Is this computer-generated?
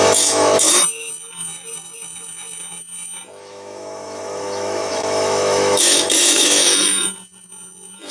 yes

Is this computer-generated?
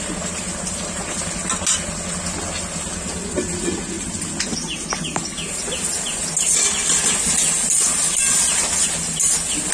no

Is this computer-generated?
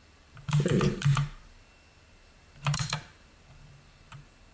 yes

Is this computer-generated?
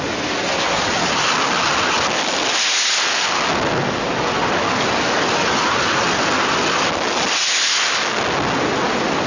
no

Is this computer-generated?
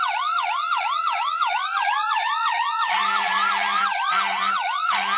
yes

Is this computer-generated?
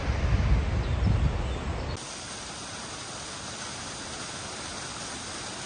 no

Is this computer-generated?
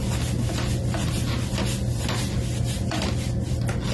no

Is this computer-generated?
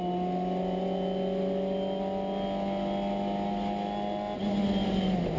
no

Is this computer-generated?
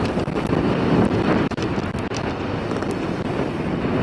no